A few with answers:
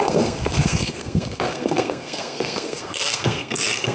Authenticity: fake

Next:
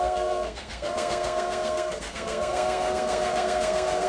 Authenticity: fake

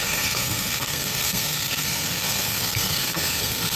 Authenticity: fake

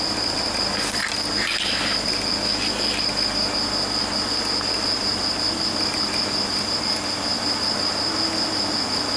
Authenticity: real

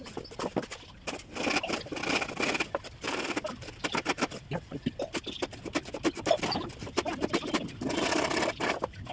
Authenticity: real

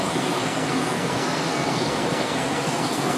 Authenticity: fake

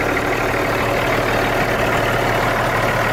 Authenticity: real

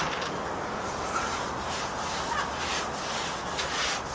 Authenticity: real